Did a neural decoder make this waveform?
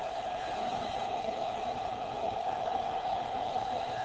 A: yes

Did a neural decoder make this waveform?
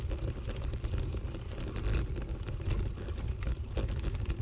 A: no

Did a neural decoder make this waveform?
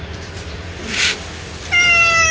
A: no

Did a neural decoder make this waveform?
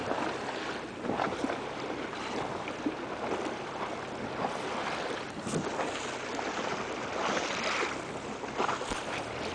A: no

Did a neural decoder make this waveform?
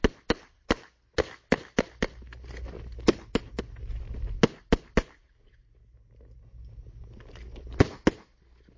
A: no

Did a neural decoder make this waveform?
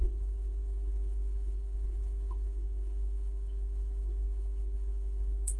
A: yes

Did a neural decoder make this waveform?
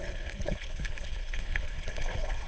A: yes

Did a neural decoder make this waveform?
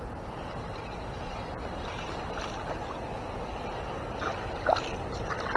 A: no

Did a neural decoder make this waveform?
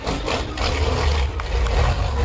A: no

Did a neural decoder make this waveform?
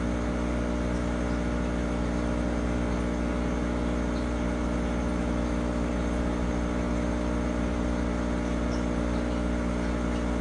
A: no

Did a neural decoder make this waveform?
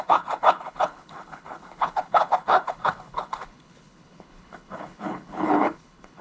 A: yes